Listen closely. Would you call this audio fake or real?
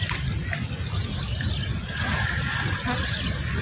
real